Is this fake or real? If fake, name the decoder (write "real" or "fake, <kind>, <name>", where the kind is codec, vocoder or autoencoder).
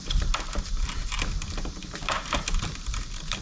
real